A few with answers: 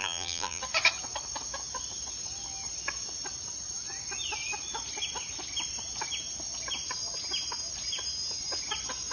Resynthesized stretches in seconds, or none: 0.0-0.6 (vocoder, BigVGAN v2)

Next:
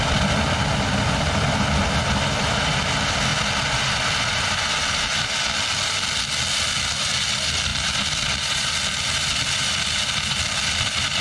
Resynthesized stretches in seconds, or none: none

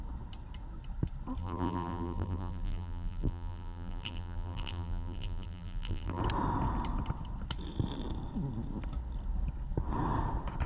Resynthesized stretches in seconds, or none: 1.4-6.2 (vocoder, BigVGAN v2)

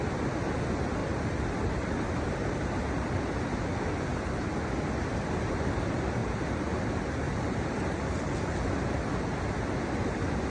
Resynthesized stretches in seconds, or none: 1.0-3.2 (vocoder, BigVGAN v2); 6.2-8.3

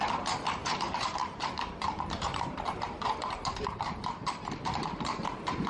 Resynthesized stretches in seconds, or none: 0.0-5.7 (vocoder, BigVGAN v2)

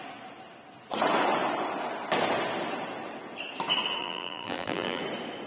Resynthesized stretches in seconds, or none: 4.0-5.0 (vocoder, BigVGAN v2)